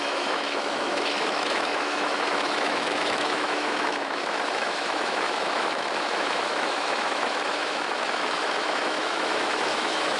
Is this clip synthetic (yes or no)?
yes